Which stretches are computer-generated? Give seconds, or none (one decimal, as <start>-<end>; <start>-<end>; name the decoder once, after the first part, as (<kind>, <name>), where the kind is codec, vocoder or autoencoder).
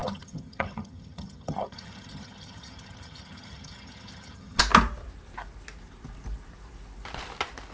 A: 0.0-4.6 (vocoder, HiFi-GAN)